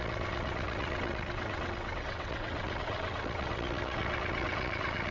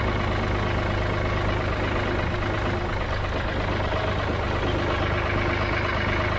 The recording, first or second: second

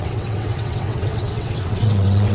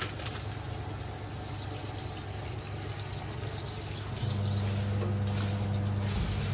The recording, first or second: second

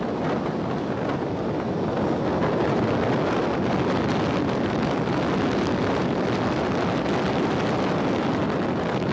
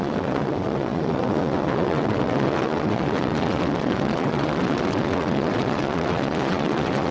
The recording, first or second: first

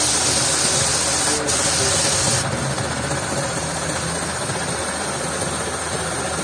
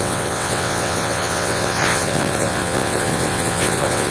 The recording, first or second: first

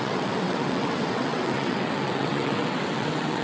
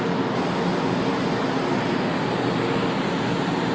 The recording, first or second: second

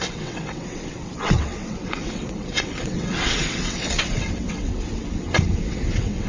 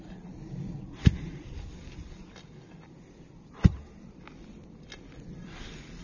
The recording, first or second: second